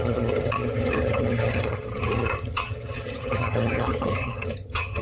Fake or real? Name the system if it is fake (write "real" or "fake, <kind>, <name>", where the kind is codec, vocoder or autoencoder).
fake, vocoder, HiFi-GAN